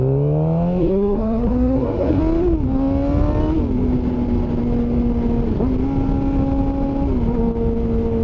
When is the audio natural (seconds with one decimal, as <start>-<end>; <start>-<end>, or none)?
0.0-0.8; 2.2-8.2